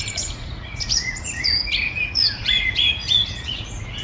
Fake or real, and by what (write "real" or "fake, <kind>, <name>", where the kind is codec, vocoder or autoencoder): fake, vocoder, Vocos